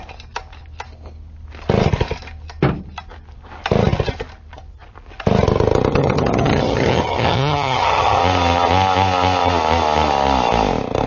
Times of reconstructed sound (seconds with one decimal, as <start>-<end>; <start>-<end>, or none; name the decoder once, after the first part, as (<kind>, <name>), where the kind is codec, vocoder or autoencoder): 5.9-8.2 (vocoder, HiFi-GAN)